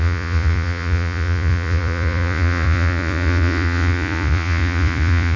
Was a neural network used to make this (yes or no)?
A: yes